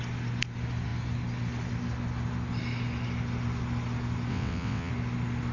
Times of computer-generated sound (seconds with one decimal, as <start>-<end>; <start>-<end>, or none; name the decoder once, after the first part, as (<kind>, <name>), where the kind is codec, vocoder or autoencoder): 4.3-4.9 (vocoder, WaveNeXt)